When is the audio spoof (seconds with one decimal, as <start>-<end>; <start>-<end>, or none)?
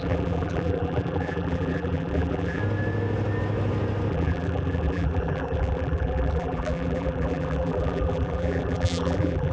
0.0-2.6; 4.1-9.5